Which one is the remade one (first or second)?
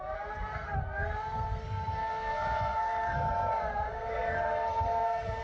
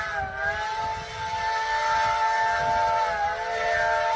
first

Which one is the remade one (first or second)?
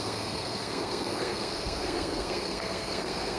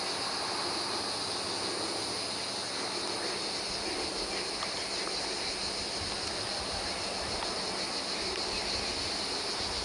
first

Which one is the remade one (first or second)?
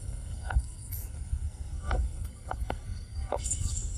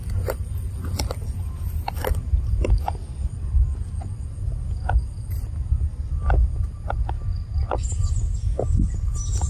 first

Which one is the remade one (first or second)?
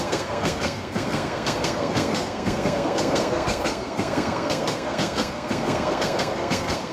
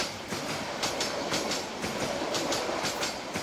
first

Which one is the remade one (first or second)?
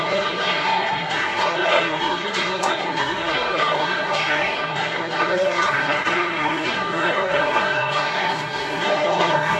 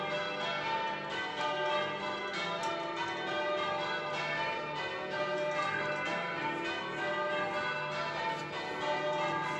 first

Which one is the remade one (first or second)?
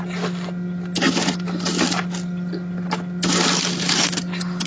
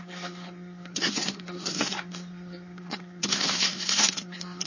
second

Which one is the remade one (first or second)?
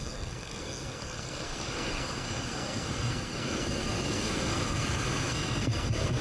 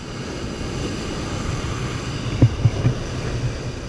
first